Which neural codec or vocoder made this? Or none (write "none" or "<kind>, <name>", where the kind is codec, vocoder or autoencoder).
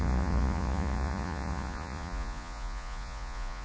vocoder, Vocos